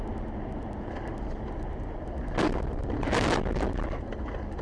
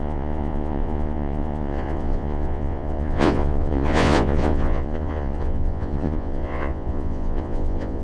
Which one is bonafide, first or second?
first